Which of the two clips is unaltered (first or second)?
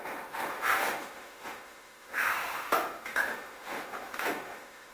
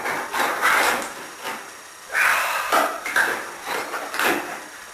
second